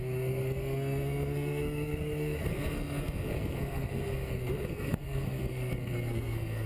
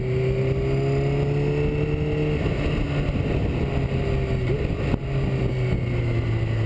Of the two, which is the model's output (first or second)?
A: first